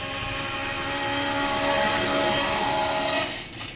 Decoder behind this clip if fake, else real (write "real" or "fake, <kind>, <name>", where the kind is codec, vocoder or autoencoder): real